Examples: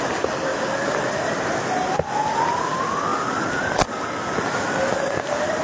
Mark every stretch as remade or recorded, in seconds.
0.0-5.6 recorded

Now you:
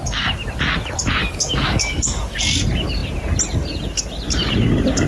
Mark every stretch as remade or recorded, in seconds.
0.0-1.2 recorded; 1.2-2.4 remade; 2.4-5.1 recorded

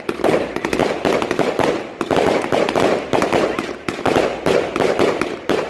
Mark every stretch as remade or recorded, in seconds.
0.0-5.7 recorded

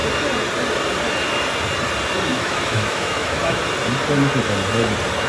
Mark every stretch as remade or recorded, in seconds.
0.0-2.3 recorded; 2.3-3.6 remade; 3.6-5.3 recorded

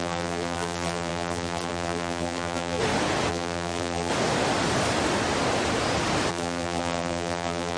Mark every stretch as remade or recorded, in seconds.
0.0-2.8 remade; 2.8-3.3 recorded; 3.3-4.1 remade; 4.1-6.3 recorded; 6.3-7.8 remade

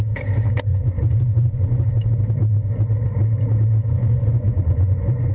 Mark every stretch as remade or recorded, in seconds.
0.0-0.7 recorded; 0.7-1.9 remade; 1.9-3.9 recorded; 3.9-5.3 remade